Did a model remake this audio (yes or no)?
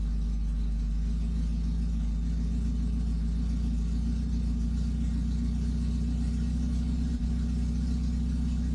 no